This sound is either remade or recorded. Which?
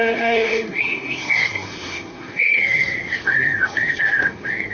remade